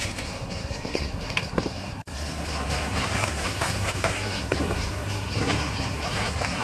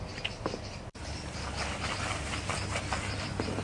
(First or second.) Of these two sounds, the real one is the second